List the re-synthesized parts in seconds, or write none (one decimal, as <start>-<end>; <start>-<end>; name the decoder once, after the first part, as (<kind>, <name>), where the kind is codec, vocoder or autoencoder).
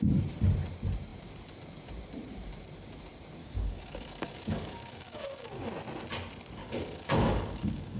3.4-5.7 (codec, DAC); 6.6-8.0